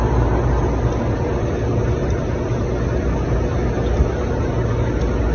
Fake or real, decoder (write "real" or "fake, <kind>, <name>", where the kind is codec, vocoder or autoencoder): real